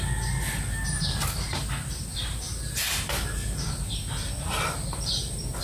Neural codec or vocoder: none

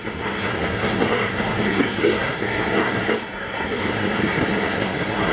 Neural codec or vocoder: codec, SNAC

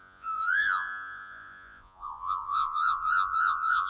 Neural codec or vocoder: vocoder, Vocos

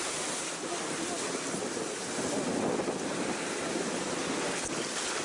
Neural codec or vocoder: none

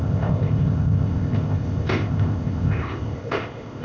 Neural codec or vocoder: codec, ZipCodec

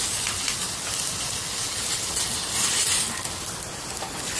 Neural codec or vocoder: none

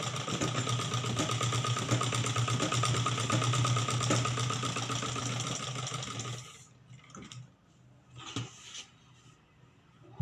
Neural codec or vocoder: none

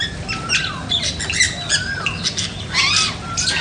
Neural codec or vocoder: none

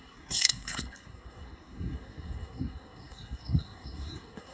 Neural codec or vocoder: codec, SNAC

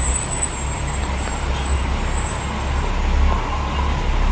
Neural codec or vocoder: none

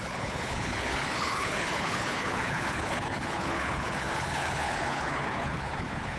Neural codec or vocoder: codec, HILCodec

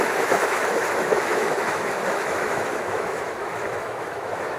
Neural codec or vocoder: autoencoder, DAC-VAE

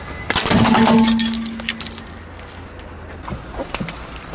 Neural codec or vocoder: none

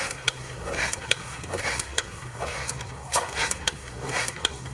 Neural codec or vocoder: codec, SNAC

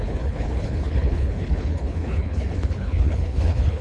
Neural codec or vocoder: codec, HILCodec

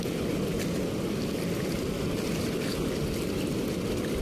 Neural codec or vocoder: none